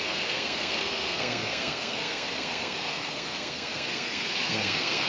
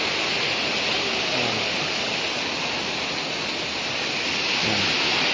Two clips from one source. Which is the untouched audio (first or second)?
second